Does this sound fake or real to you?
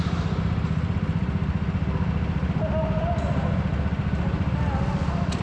real